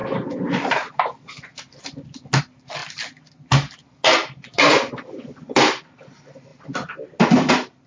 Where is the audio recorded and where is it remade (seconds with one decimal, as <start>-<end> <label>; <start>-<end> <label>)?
0.0-7.9 recorded